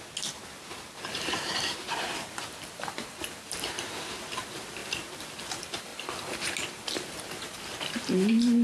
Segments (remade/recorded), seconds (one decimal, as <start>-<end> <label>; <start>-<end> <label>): 0.0-8.6 remade